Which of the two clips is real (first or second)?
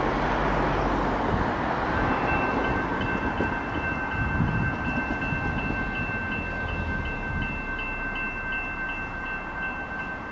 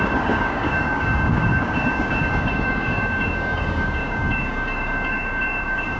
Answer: first